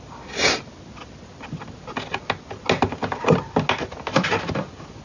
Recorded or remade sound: recorded